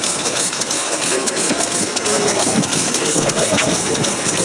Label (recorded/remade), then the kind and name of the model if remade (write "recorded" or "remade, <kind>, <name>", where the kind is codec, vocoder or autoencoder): remade, codec, SNAC